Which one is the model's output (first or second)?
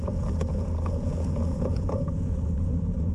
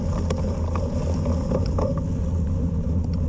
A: first